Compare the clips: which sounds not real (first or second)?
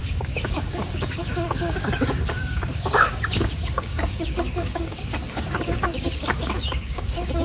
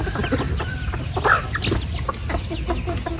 first